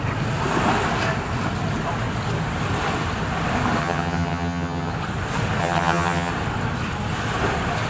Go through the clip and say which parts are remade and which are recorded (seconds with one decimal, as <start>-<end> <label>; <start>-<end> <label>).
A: 0.0-3.8 recorded; 3.8-4.9 remade; 4.9-5.6 recorded; 5.6-6.3 remade; 6.3-7.9 recorded